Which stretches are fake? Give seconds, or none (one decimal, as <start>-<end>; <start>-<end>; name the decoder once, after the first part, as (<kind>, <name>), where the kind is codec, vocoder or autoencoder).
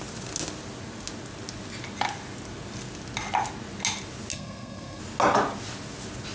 4.3-5.0 (codec, SNAC)